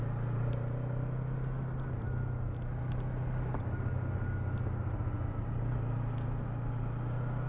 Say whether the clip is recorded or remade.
recorded